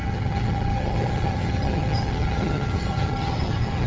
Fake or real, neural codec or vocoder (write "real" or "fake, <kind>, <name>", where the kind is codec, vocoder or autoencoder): fake, vocoder, HiFi-GAN